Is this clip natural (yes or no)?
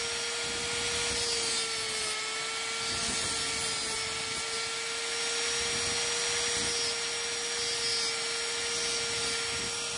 yes